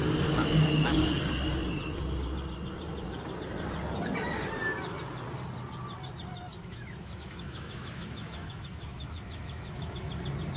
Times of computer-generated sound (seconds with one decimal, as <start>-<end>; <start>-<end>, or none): 6.5-10.1